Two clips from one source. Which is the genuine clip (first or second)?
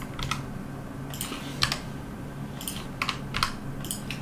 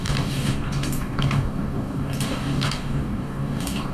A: first